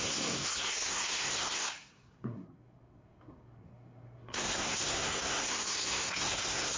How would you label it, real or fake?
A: fake